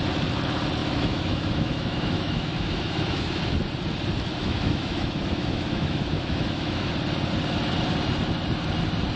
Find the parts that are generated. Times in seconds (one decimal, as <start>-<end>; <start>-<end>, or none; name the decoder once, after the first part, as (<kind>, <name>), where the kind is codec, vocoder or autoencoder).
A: 0.8-3.4 (autoencoder, DAC-VAE); 4.3-6.9